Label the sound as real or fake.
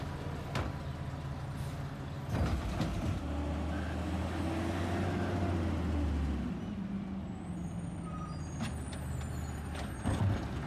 real